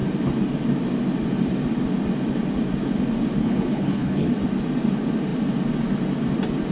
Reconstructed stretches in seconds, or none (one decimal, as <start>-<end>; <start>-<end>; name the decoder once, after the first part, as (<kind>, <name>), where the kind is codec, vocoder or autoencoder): 3.4-4.3 (codec, HILCodec)